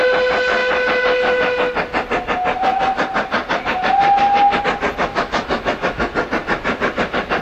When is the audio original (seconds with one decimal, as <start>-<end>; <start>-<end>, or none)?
0.0-5.0; 6.0-7.4